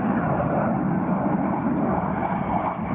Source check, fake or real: fake